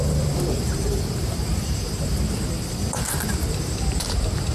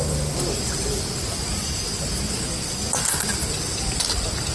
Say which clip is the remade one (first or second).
first